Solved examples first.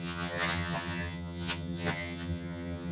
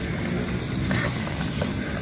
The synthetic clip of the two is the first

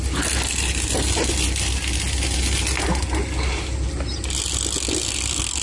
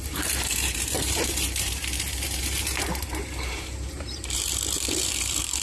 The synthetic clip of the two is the second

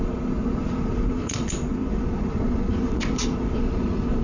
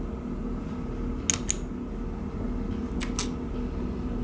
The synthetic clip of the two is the first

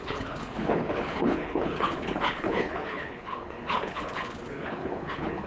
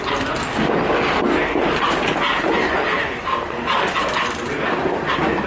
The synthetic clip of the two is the first